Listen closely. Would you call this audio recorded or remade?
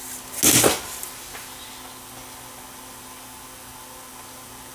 recorded